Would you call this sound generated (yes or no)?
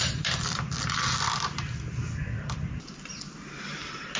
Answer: yes